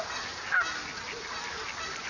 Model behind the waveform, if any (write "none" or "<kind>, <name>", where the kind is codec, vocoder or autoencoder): none